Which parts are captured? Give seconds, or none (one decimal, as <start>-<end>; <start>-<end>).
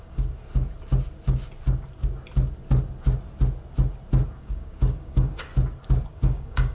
0.4-4.4; 5.5-6.1